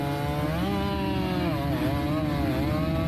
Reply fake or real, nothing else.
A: real